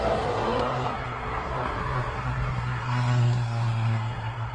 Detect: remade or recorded remade